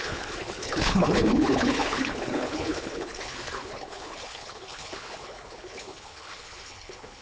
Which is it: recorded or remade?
remade